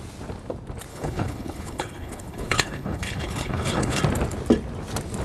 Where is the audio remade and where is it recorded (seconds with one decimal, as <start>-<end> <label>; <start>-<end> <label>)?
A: 0.0-0.9 recorded; 0.9-4.0 remade; 4.0-5.2 recorded